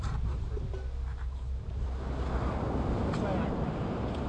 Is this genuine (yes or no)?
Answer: yes